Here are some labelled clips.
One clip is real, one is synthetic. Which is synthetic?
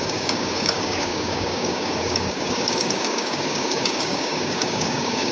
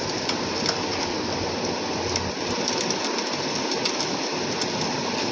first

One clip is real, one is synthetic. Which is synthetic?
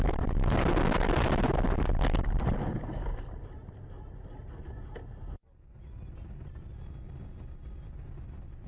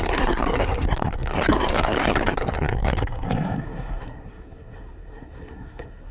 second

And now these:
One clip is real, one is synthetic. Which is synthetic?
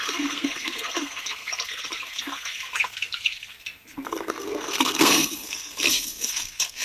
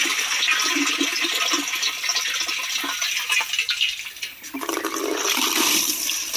first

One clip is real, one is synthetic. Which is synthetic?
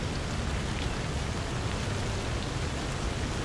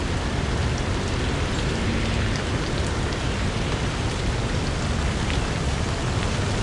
second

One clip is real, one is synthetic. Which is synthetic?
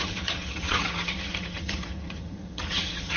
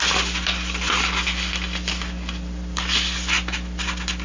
first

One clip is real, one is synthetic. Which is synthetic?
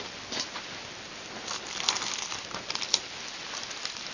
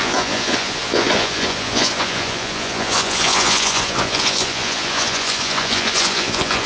second